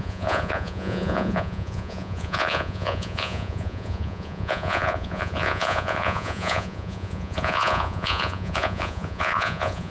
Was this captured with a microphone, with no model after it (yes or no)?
no